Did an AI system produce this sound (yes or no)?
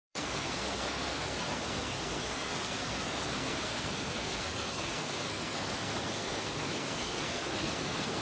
yes